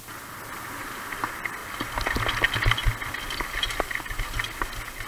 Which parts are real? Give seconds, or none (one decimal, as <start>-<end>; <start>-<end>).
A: 0.0-5.1